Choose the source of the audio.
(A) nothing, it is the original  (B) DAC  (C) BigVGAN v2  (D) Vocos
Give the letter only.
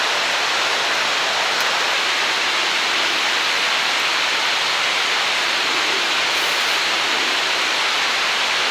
A